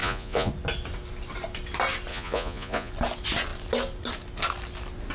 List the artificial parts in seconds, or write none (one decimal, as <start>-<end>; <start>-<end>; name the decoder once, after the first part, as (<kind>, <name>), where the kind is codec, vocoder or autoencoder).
0.0-0.5 (vocoder, Vocos); 2.1-2.9